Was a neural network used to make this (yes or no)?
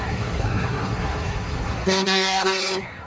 yes